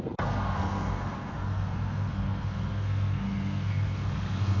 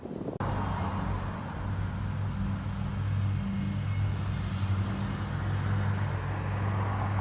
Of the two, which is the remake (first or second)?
first